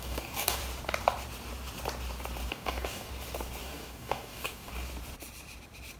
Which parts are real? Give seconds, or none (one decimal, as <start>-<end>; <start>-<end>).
0.6-2.5; 3.1-3.6; 4.7-6.0